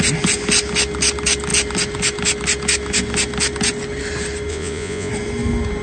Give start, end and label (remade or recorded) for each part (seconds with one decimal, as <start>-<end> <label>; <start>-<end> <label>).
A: 0.0-4.5 recorded; 4.5-5.1 remade; 5.1-5.8 recorded